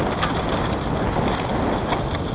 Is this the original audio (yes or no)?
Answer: yes